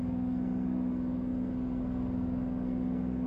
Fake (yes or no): yes